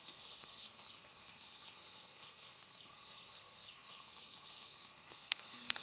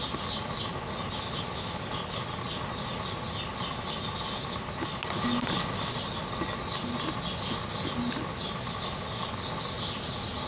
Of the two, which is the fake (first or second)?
first